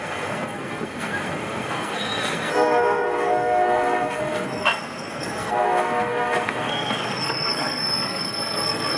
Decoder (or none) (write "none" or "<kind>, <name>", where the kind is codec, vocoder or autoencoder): codec, SNAC